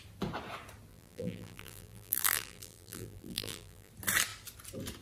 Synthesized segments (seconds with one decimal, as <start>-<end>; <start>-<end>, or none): 0.9-3.9